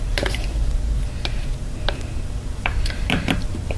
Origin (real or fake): fake